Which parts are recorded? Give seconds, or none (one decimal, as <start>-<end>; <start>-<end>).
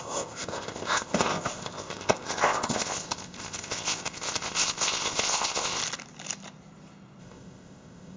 5.8-7.2